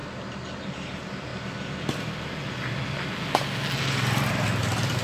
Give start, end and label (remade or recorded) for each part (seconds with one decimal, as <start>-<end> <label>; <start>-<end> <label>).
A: 0.0-0.6 recorded; 0.6-1.3 remade; 1.3-3.8 recorded; 3.8-5.0 remade